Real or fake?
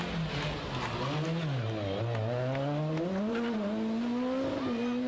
real